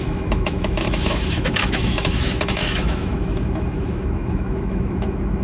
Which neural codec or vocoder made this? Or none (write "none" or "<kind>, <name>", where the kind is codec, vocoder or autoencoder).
autoencoder, DAC-VAE